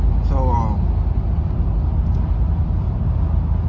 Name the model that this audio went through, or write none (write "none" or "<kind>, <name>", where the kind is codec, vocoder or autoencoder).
none